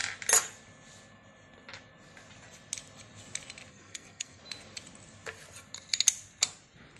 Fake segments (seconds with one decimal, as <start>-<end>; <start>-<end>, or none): 3.7-4.4